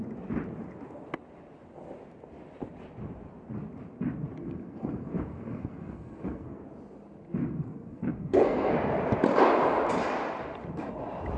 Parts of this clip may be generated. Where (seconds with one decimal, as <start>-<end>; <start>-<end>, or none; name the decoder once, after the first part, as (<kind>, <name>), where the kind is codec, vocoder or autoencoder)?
4.4-6.6 (codec, SNAC); 7.4-8.7

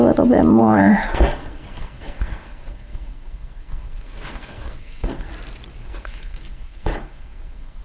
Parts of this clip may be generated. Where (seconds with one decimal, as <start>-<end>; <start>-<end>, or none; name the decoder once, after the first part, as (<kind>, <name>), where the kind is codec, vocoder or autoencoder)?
0.6-5.3 (codec, SNAC); 5.8-7.8